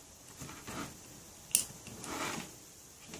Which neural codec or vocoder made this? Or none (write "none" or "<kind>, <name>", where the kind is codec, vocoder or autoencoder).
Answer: none